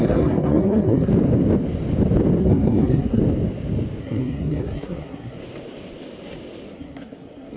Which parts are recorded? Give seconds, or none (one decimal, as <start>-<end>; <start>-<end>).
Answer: 1.1-2.4; 3.2-4.0; 5.4-6.7